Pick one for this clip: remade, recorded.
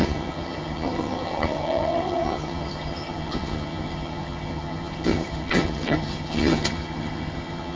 remade